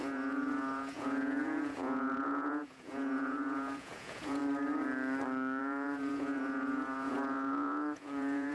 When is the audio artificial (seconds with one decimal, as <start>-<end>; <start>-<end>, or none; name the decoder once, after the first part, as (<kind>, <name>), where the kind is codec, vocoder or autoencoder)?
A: 0.0-4.4 (vocoder, Vocos); 5.6-8.5